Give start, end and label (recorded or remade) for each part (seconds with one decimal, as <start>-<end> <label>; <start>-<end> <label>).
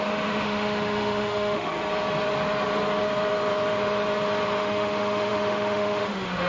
0.0-1.7 remade; 1.7-4.6 recorded; 4.6-6.5 remade